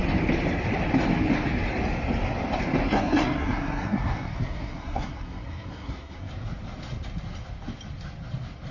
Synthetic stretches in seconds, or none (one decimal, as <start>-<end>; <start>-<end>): 2.8-6.3